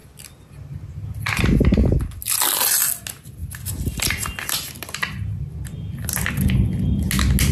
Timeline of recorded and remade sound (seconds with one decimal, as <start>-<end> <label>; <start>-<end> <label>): 0.0-7.5 recorded